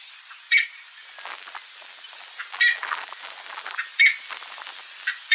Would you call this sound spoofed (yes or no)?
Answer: no